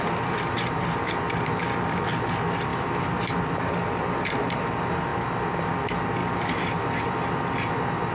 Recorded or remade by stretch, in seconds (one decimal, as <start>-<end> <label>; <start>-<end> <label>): 0.0-6.2 recorded; 6.2-7.0 remade; 7.0-8.1 recorded

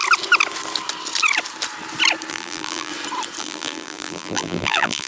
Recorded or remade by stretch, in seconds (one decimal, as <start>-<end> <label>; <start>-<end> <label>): 0.0-2.3 recorded; 2.3-2.9 remade; 2.9-3.4 recorded; 3.4-5.1 remade

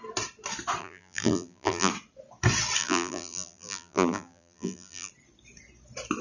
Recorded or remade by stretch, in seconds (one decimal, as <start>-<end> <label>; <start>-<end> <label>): 0.0-0.8 recorded; 0.8-1.9 remade; 1.9-2.8 recorded; 2.8-5.1 remade; 5.1-6.2 recorded

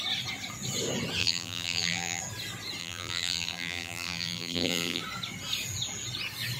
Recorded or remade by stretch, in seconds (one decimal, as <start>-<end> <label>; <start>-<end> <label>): 0.0-1.2 recorded; 1.2-2.2 remade; 2.2-2.8 recorded; 2.8-5.0 remade; 5.0-6.6 recorded

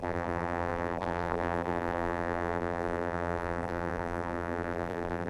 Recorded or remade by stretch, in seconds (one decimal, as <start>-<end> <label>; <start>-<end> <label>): 0.0-5.3 remade

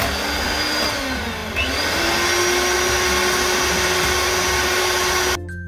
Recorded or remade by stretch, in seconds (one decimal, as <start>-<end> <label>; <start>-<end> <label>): 0.0-5.7 recorded

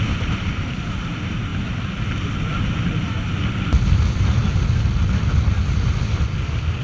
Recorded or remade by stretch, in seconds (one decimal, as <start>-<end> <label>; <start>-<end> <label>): 0.0-1.5 remade; 1.5-5.6 recorded; 5.6-6.8 remade

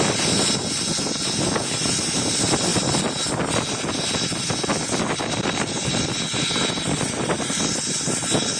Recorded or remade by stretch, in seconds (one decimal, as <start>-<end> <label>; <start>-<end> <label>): 0.0-8.6 recorded